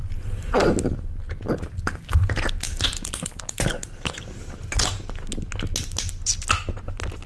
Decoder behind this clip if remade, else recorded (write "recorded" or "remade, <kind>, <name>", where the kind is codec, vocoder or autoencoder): recorded